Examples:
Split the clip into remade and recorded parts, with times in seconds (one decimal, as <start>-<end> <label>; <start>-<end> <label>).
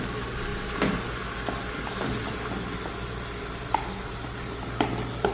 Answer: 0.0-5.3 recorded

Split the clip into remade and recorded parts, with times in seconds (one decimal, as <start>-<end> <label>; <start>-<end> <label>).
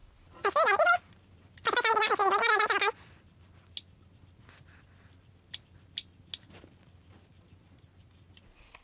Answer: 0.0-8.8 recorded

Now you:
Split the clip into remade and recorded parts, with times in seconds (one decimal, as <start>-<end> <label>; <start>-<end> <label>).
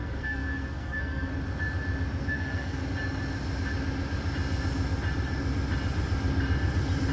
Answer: 0.0-1.3 remade; 1.3-2.2 recorded; 2.2-2.8 remade; 2.8-7.1 recorded